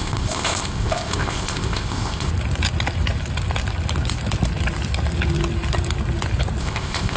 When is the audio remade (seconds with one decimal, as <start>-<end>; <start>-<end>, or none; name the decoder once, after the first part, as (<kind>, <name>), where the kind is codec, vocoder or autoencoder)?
0.0-2.3 (codec, ZipCodec); 6.6-7.2